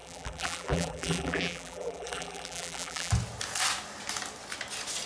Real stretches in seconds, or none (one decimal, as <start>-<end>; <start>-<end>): 3.1-5.1